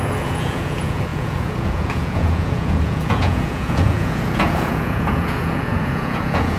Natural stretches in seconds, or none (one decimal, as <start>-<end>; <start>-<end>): none